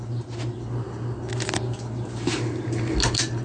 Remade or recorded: recorded